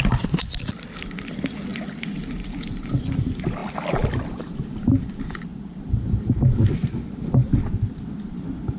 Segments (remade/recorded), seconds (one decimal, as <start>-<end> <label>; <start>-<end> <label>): 0.0-1.7 recorded; 1.7-2.3 remade; 2.3-5.5 recorded; 5.5-6.1 remade; 6.1-8.8 recorded